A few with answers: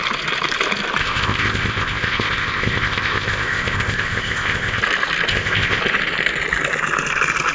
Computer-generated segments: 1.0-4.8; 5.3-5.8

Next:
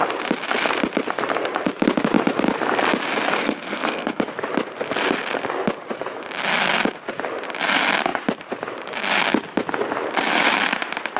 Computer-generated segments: 3.4-4.2

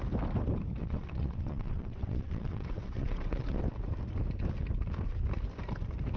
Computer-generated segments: 0.8-3.6

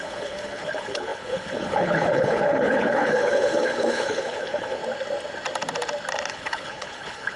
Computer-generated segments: 0.0-4.8; 6.3-7.4

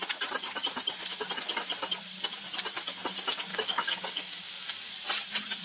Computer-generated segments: 3.5-4.9

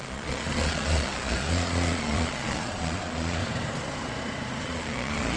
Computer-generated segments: 0.0-3.4; 4.6-5.4